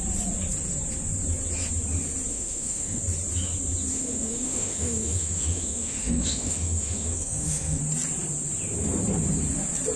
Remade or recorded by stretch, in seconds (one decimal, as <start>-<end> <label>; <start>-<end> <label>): 0.0-2.3 recorded; 2.3-3.0 remade; 3.0-3.9 recorded; 3.9-7.8 remade; 7.8-10.0 recorded